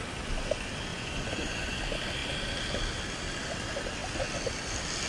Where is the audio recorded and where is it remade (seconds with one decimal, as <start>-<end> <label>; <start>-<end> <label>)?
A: 0.0-0.9 recorded; 0.9-1.8 remade; 1.8-5.1 recorded